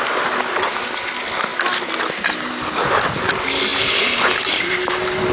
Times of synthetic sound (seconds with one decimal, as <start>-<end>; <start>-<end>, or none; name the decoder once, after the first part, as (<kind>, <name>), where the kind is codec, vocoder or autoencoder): none